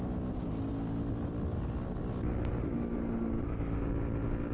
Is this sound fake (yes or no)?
no